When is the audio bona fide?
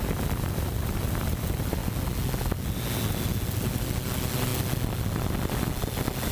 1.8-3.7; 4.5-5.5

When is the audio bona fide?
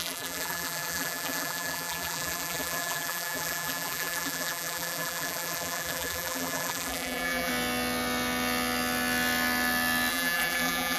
7.5-10.1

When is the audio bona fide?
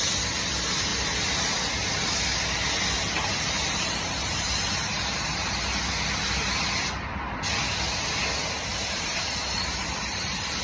0.0-0.9; 1.4-3.6; 5.5-8.7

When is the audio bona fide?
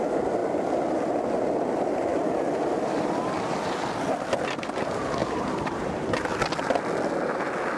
0.0-2.1; 3.1-5.2; 6.2-7.8